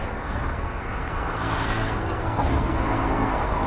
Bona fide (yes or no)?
no